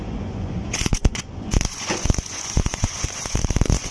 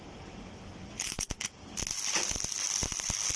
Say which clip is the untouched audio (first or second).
second